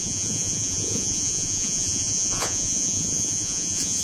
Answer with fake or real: fake